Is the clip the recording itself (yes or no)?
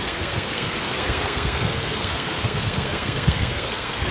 no